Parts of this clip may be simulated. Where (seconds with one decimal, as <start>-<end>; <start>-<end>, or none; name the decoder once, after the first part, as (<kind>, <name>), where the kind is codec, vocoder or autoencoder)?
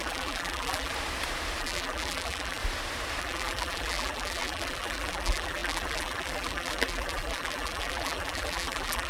0.0-0.9 (vocoder, BigVGAN v2); 1.6-2.6; 3.2-9.1